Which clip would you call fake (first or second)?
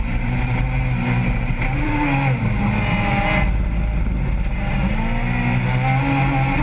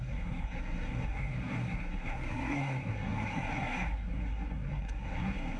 second